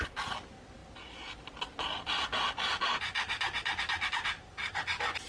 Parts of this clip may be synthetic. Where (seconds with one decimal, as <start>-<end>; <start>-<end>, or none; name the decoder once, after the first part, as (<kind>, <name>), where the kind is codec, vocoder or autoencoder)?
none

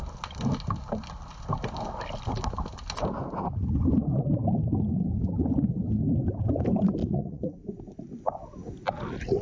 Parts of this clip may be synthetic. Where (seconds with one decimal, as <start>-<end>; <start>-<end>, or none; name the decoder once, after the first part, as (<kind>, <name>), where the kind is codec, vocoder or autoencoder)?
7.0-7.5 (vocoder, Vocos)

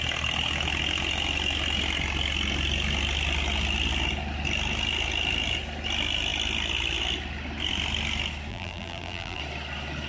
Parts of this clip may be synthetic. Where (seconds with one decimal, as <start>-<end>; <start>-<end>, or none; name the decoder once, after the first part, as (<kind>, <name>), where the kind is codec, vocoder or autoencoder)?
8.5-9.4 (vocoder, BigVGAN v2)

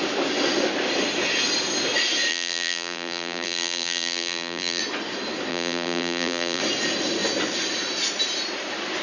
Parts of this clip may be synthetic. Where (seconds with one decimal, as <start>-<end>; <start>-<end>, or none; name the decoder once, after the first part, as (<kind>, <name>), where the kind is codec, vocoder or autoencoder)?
2.3-4.8 (vocoder, BigVGAN v2); 5.5-6.6

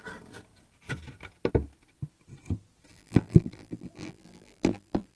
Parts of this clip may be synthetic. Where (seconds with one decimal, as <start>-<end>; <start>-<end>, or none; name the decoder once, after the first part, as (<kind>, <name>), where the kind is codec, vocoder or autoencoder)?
2.9-5.2 (vocoder, BigVGAN v2)